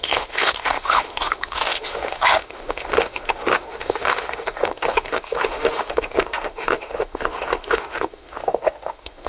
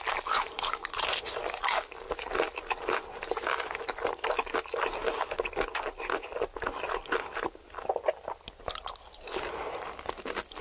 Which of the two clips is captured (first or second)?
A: second